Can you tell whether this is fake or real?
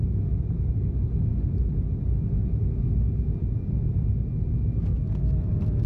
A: real